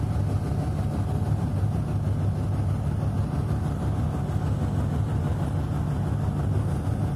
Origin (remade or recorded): recorded